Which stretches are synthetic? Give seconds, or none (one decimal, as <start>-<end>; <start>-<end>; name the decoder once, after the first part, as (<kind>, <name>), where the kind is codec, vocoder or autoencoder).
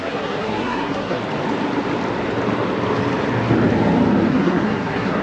0.0-1.2 (codec, SNAC); 4.3-5.2